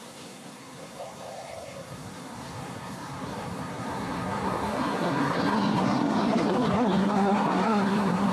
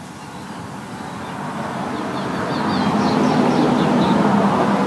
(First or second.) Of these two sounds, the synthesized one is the first